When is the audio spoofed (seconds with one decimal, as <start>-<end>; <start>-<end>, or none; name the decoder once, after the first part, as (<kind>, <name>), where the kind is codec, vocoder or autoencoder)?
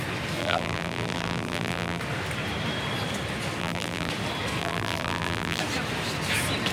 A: 0.4-2.0 (vocoder, BigVGAN v2); 3.6-4.1; 4.6-5.6